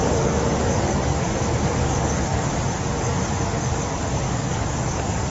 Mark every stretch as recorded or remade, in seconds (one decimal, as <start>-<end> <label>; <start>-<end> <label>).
0.0-2.3 remade; 2.3-2.8 recorded; 2.8-5.3 remade